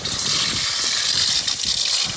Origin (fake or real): real